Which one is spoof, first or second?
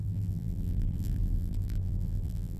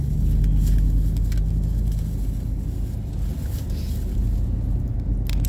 first